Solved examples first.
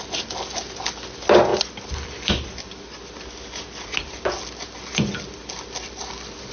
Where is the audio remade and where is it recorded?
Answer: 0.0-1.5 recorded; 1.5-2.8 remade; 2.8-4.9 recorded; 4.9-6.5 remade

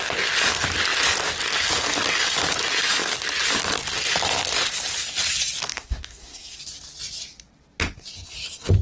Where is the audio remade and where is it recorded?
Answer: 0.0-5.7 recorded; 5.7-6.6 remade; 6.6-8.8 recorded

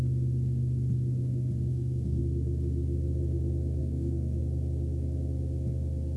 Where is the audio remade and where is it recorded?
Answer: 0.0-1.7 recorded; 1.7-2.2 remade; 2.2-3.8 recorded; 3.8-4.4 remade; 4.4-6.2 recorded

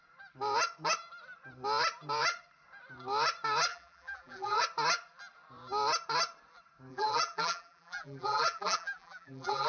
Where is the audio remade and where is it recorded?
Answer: 0.0-3.7 recorded; 3.7-4.6 remade; 4.6-6.9 recorded; 6.9-9.7 remade

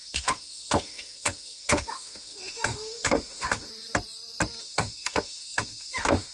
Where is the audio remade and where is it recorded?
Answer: 0.0-3.7 remade; 3.7-4.6 recorded; 4.6-6.3 remade

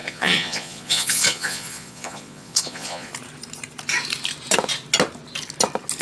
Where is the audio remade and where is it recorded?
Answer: 0.0-3.1 remade; 3.1-6.0 recorded

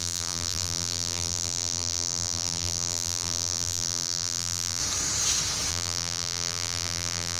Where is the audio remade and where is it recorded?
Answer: 0.0-4.8 remade; 4.8-5.7 recorded; 5.7-7.4 remade

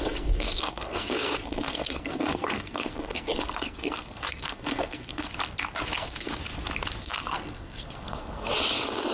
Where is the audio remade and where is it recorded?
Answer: 0.0-5.3 remade; 5.3-5.9 recorded; 5.9-6.4 remade; 6.4-7.0 recorded; 7.0-8.5 remade; 8.5-9.1 recorded